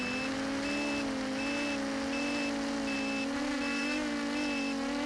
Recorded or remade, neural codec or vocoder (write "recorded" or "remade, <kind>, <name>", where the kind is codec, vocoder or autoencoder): recorded